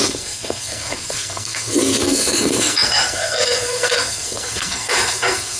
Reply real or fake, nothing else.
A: fake